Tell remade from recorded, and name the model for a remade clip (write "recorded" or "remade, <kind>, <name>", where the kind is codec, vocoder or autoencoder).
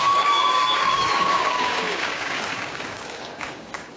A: remade, codec, DAC